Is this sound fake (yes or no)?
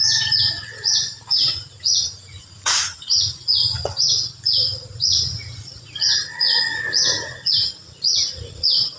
yes